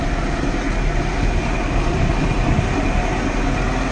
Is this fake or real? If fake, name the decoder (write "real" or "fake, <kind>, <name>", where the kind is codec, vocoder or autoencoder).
real